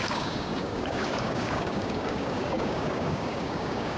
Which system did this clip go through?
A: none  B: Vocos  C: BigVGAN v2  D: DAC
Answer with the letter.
D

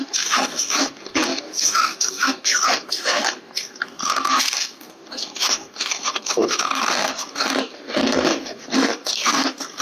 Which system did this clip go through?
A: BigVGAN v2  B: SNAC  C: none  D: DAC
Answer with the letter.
D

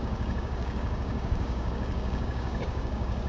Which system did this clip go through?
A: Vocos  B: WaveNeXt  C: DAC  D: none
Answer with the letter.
C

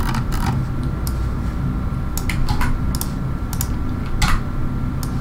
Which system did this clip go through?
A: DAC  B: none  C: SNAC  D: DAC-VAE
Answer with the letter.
B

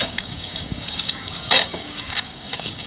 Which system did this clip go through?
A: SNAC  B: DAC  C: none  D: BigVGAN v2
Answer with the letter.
B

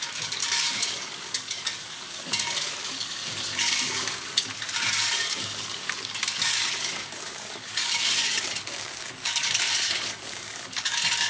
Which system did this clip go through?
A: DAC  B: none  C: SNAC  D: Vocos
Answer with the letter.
A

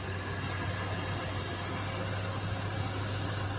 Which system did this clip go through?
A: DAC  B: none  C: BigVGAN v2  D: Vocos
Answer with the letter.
B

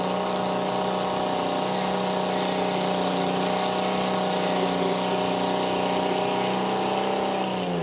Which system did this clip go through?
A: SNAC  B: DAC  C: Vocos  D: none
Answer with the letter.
D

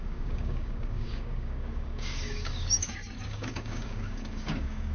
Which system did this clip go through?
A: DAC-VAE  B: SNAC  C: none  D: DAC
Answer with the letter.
D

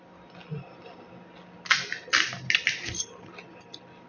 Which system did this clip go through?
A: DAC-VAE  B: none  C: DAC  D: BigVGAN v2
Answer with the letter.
B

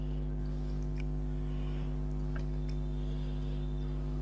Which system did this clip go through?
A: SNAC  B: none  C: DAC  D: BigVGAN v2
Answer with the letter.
B